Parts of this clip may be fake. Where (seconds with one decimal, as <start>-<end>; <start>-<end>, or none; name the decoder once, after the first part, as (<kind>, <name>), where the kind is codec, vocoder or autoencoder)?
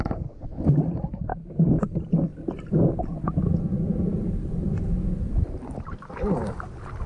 none